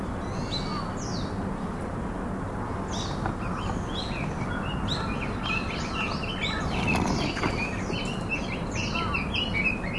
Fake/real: real